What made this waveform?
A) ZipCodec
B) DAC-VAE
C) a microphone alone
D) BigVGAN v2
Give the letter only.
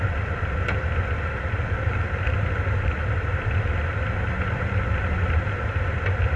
D